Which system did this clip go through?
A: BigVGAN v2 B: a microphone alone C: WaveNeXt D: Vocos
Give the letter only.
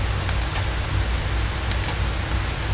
B